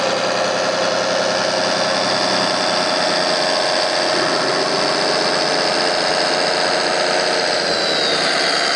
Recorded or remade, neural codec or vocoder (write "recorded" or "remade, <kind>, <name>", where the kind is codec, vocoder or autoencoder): recorded